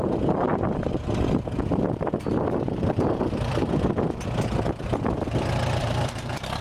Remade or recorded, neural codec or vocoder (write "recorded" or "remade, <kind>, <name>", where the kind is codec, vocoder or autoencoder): recorded